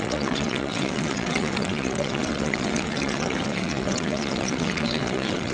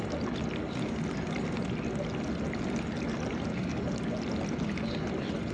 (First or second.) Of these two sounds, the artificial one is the first